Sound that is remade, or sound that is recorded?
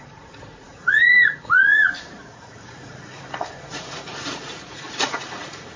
remade